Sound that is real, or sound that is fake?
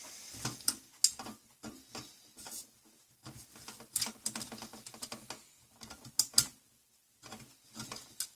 real